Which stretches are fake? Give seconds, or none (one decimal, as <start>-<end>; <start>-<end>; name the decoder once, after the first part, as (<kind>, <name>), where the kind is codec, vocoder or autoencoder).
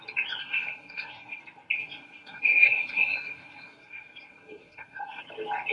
0.4-1.4 (codec, SNAC); 1.8-5.2